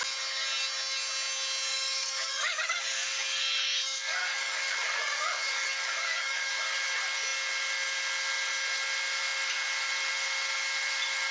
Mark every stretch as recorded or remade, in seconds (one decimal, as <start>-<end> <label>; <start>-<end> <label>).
0.0-1.7 recorded; 1.7-6.5 remade; 6.5-11.3 recorded